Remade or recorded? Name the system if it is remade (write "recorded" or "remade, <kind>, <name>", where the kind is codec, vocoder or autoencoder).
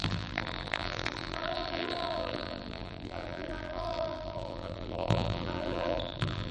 remade, vocoder, BigVGAN v2